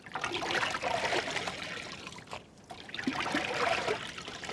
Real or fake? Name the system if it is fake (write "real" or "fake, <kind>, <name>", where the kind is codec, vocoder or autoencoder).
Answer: real